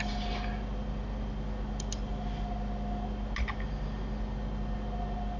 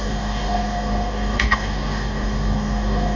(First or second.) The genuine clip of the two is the first